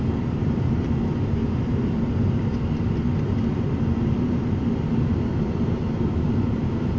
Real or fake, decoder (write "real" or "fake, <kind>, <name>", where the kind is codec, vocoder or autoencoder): real